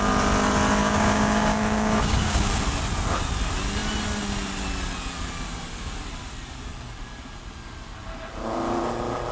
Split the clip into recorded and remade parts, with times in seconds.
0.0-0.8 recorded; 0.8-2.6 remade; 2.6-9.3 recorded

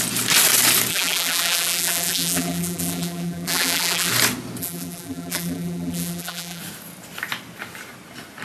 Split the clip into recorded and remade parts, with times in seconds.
0.0-0.9 recorded; 0.9-4.1 remade; 4.1-4.6 recorded; 4.6-6.6 remade; 6.6-8.4 recorded

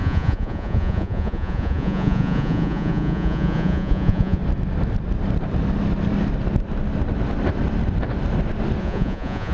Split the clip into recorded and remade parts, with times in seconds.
0.0-4.4 remade; 4.4-8.8 recorded; 8.8-9.5 remade

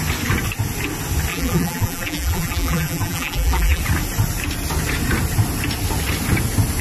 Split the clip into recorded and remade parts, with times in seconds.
0.0-1.3 recorded; 1.3-3.8 remade; 3.8-6.8 recorded

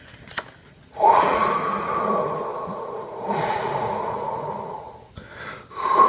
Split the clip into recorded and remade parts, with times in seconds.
0.0-0.6 recorded; 0.6-2.0 remade; 2.0-2.5 recorded; 2.5-4.8 remade; 4.8-6.1 recorded